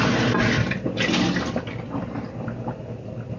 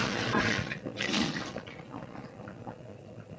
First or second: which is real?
first